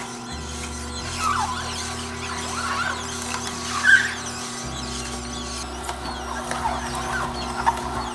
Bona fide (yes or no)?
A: yes